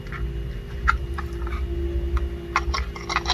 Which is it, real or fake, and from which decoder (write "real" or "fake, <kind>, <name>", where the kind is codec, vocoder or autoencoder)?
real